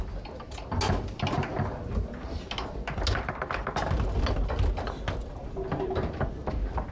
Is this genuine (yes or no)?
yes